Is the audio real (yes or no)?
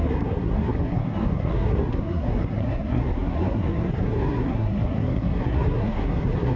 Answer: no